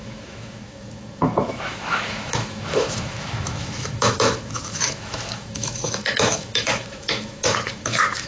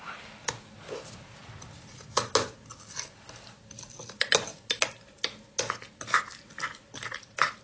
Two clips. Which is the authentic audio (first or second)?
second